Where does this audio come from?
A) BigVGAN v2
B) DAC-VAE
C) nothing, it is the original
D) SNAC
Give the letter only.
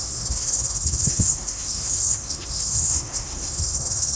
D